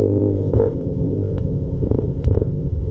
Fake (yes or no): yes